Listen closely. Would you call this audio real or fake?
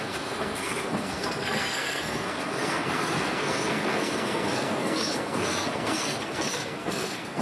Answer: fake